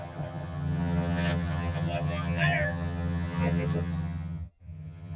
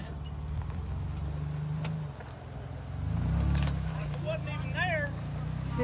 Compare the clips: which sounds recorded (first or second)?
second